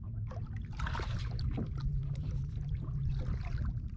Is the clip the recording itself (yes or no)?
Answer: no